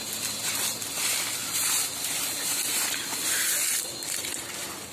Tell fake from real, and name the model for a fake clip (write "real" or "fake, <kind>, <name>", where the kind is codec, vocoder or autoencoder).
real